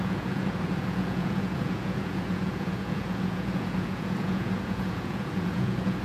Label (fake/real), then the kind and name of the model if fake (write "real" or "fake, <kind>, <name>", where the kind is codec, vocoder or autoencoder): fake, vocoder, Vocos